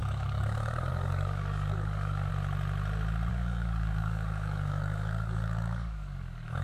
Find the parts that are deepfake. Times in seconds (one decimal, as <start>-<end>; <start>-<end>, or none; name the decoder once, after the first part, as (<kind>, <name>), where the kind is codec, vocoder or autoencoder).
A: 0.0-2.3 (codec, DAC); 3.3-6.6